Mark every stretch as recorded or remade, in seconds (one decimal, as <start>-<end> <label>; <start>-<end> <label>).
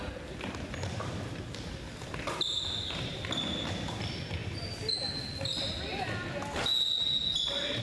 0.0-7.8 recorded